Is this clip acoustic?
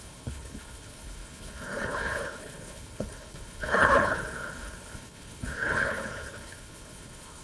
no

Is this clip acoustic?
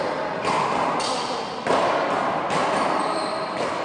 yes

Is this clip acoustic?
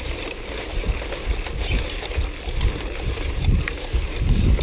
yes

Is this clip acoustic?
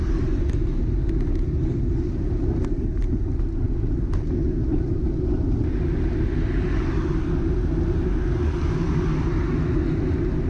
yes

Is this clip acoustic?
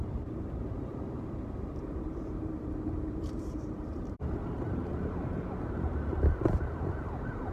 no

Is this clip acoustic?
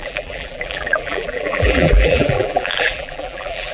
no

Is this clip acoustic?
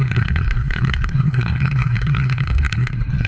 no